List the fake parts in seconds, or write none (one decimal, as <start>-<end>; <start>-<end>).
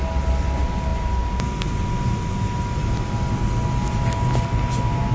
none